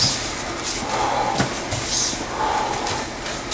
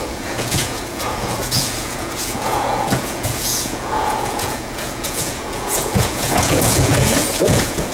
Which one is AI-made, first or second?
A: second